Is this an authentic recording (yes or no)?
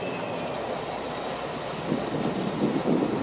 yes